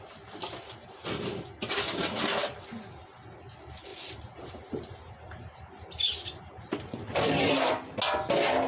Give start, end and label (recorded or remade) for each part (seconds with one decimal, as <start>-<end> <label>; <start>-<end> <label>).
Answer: 0.0-3.9 recorded; 3.9-7.4 remade; 7.4-8.7 recorded